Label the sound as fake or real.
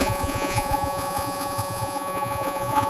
fake